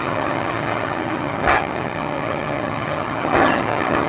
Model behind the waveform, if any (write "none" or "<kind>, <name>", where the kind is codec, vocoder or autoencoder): vocoder, HiFi-GAN